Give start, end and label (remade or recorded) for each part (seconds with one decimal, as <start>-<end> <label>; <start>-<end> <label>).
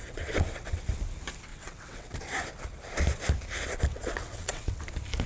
0.0-0.8 remade; 0.8-1.5 recorded; 1.5-2.1 remade; 2.1-3.9 recorded; 3.9-4.8 remade; 4.8-5.3 recorded